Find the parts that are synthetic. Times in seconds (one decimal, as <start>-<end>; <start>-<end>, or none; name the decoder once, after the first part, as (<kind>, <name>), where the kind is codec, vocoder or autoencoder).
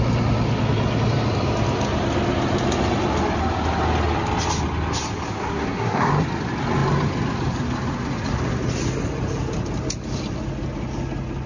5.4-6.1 (codec, SNAC)